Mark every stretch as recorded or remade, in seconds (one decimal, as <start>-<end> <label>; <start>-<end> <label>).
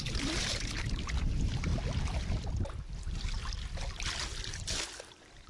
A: 0.0-1.7 remade; 1.7-5.0 recorded; 5.0-5.5 remade